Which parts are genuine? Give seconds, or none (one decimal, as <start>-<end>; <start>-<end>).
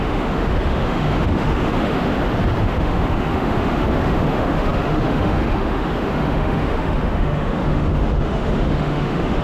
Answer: 2.1-2.6